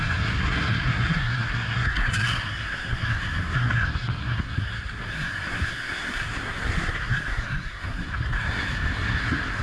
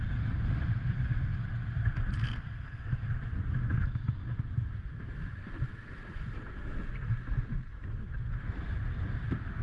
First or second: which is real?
second